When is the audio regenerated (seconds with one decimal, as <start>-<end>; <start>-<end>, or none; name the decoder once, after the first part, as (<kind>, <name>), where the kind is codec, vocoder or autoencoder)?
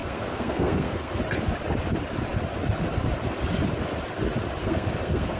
0.0-1.2 (codec, SNAC); 4.6-5.4